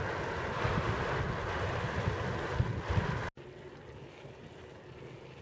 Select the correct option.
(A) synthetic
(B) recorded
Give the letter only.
B